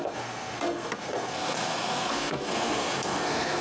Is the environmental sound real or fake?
fake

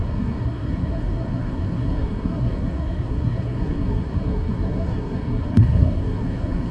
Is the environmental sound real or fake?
fake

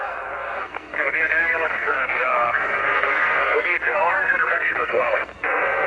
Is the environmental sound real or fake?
fake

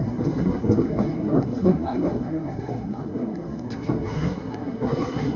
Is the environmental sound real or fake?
fake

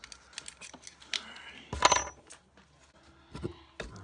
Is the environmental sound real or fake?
real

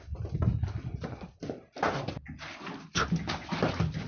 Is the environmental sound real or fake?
real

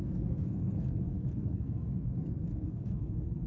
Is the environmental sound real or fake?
fake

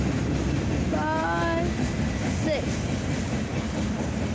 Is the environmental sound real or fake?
real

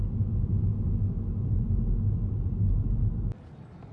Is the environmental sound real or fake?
real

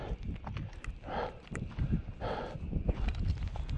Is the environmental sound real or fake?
real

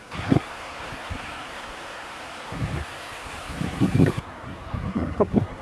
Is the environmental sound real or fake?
fake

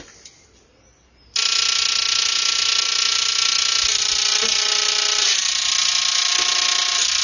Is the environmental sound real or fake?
real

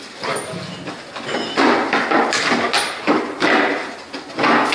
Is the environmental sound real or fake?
real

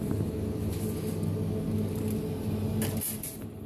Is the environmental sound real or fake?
real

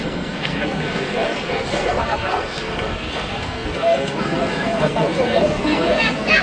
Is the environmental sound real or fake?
fake